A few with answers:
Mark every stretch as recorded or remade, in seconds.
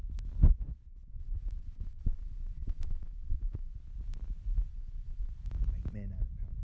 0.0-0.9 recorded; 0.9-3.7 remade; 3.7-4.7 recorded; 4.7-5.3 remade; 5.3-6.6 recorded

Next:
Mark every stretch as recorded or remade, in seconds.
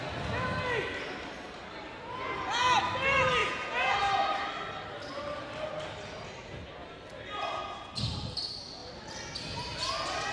0.0-3.4 recorded; 3.4-3.9 remade; 3.9-10.3 recorded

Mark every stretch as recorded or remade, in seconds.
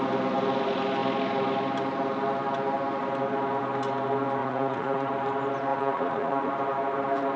0.0-4.4 recorded; 4.4-5.1 remade; 5.1-5.7 recorded; 5.7-6.5 remade; 6.5-7.4 recorded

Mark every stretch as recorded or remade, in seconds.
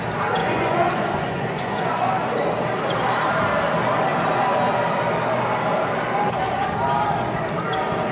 0.0-0.4 recorded; 0.4-2.1 remade; 2.1-8.1 recorded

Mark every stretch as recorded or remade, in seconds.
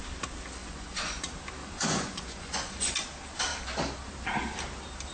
0.0-0.6 recorded; 0.6-1.2 remade; 1.2-1.6 recorded; 1.6-2.9 remade; 2.9-5.1 recorded